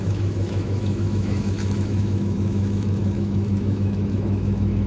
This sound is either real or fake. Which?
fake